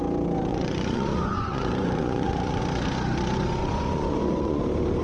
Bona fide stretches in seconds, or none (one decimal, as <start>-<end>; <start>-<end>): 0.0-0.5; 2.6-3.6; 4.6-5.0